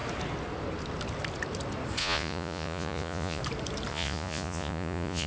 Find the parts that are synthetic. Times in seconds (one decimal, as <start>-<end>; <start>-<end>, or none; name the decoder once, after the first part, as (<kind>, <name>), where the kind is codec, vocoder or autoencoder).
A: 2.0-3.4 (vocoder, Vocos); 3.9-5.3